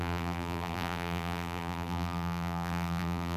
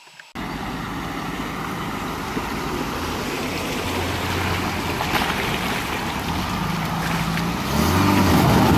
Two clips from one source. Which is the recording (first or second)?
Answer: second